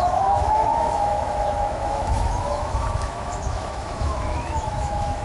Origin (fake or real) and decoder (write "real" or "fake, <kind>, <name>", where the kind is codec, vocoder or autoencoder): fake, autoencoder, DAC-VAE